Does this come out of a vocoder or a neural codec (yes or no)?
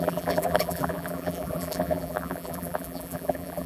yes